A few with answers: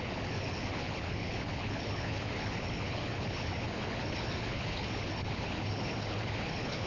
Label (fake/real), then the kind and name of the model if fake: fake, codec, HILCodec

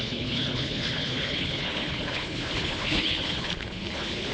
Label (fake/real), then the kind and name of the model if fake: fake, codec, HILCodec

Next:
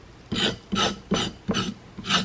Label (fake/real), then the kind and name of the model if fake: real